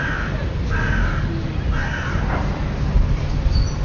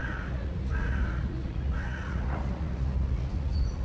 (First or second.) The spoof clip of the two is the second